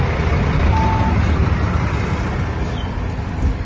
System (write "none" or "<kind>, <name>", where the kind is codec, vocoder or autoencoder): none